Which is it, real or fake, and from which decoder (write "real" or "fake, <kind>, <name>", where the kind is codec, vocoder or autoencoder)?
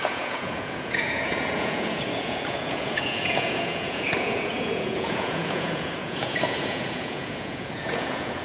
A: fake, vocoder, Vocos